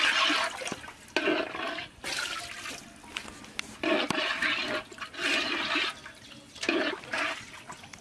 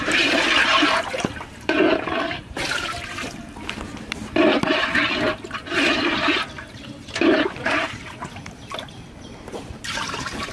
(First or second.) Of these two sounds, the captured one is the first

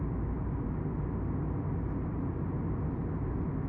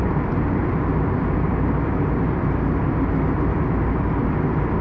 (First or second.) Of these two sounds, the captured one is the first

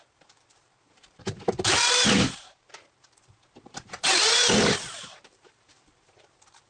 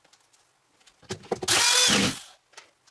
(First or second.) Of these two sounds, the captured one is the second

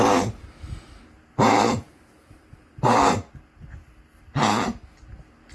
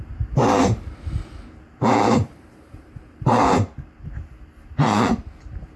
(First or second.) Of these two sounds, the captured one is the first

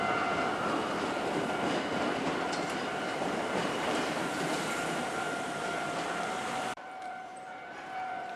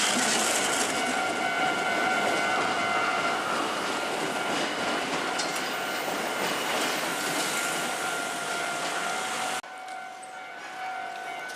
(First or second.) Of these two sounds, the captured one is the second